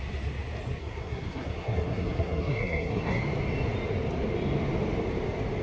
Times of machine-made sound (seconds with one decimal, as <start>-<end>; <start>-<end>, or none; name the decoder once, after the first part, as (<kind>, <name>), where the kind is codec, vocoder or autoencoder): 0.8-3.2 (codec, SNAC)